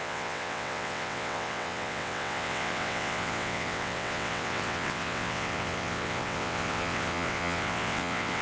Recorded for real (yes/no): no